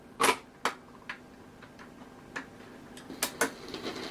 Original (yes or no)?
yes